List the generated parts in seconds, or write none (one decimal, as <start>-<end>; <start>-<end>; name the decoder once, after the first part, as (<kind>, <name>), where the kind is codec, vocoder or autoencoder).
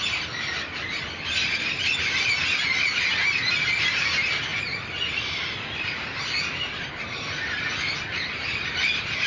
none